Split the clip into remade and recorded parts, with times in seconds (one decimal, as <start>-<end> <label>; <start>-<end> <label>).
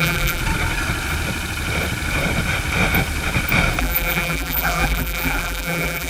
0.0-0.4 remade; 0.4-3.8 recorded; 3.8-6.1 remade